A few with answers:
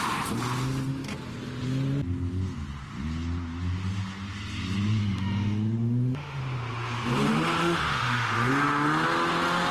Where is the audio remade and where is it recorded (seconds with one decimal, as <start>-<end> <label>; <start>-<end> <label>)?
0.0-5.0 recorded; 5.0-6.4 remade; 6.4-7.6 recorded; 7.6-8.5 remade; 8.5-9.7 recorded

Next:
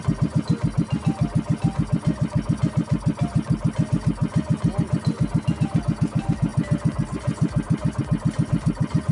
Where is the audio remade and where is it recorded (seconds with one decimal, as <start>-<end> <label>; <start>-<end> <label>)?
0.0-9.1 recorded

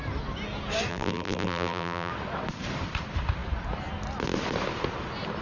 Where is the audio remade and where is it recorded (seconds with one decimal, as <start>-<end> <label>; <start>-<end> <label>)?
0.0-0.9 recorded; 0.9-2.1 remade; 2.1-5.4 recorded

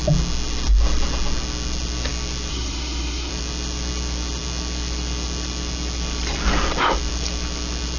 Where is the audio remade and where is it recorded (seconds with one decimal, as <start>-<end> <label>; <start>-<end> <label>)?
0.0-2.5 recorded; 2.5-3.3 remade; 3.3-8.0 recorded